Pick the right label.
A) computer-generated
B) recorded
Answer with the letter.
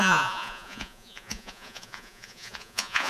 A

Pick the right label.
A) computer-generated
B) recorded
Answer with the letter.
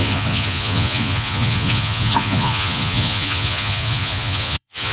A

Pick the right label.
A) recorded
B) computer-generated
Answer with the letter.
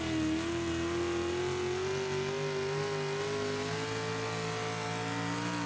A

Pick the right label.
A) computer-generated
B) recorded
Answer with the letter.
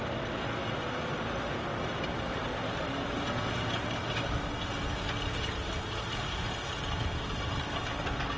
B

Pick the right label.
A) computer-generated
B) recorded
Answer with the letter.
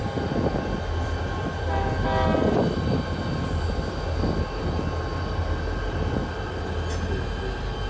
B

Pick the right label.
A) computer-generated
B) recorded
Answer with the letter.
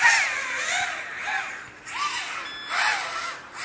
B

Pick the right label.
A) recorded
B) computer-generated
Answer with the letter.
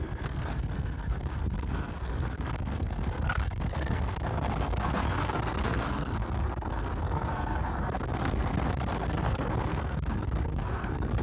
B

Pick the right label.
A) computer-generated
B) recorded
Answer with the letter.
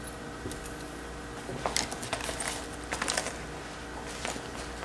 B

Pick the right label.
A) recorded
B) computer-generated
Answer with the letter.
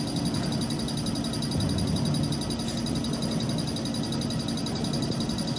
A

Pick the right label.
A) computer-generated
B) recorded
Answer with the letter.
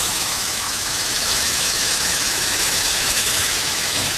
A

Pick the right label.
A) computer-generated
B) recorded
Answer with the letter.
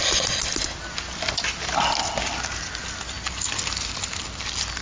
B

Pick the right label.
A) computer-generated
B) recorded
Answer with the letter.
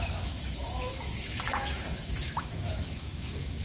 A